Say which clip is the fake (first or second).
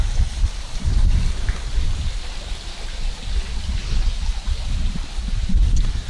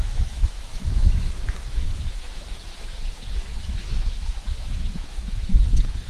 second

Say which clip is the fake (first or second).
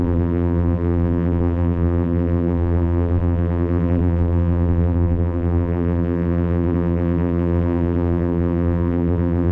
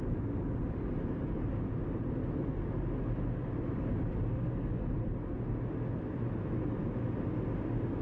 first